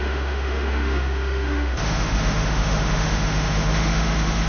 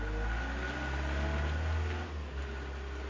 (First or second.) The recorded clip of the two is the second